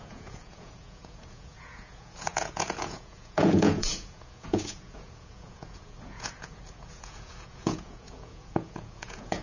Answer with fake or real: fake